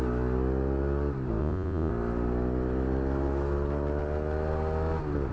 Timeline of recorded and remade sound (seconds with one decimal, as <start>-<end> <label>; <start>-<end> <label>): 0.0-1.4 recorded; 1.4-1.9 remade; 1.9-5.3 recorded